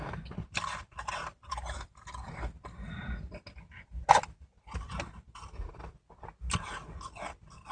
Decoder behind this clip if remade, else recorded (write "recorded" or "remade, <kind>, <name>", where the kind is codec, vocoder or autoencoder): recorded